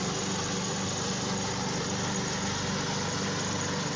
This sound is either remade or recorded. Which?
recorded